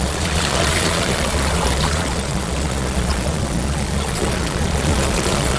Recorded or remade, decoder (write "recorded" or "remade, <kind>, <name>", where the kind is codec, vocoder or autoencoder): remade, vocoder, Vocos